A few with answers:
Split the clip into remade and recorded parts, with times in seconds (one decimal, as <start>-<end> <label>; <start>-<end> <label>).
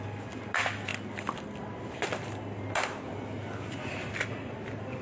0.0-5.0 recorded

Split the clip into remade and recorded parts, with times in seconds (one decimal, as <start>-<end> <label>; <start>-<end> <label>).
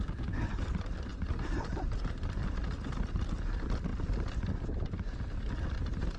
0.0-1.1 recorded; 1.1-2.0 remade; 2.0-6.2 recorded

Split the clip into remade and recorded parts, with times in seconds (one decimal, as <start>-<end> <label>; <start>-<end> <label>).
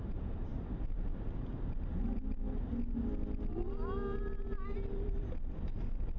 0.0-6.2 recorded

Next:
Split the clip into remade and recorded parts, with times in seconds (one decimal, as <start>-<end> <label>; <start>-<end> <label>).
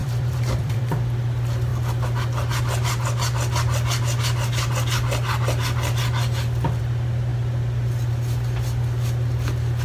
0.0-0.8 remade; 0.8-9.8 recorded